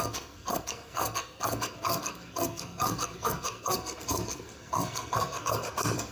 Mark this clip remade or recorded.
remade